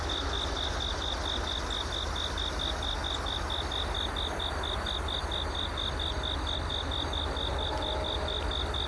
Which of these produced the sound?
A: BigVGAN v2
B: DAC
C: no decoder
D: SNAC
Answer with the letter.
C